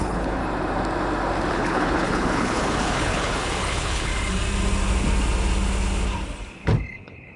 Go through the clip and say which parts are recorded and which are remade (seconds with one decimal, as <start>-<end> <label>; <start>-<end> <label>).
0.0-0.4 remade; 0.4-1.5 recorded; 1.5-4.1 remade; 4.1-6.9 recorded; 6.9-7.4 remade